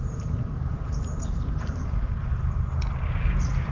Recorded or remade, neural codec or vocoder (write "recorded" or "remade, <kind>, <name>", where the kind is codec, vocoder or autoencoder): recorded